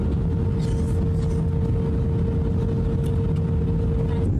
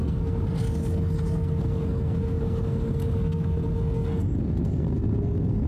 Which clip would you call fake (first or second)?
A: second